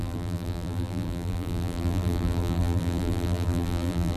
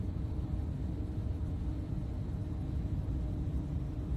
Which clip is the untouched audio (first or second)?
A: second